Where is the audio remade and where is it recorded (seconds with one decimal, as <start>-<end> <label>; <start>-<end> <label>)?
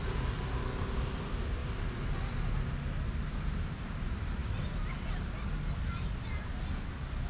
0.0-7.3 recorded